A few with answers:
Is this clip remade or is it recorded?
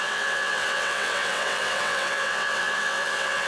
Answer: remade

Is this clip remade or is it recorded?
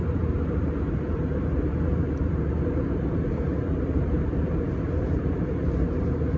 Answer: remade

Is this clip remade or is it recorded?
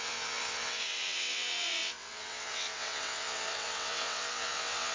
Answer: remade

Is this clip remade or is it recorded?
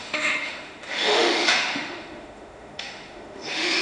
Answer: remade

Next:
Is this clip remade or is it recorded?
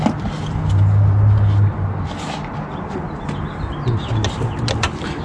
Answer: recorded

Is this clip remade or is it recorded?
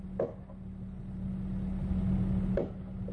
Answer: recorded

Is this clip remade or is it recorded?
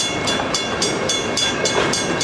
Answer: recorded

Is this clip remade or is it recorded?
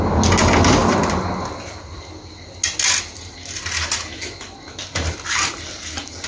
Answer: recorded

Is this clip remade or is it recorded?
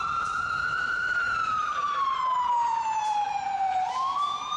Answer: remade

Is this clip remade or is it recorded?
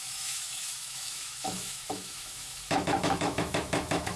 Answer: remade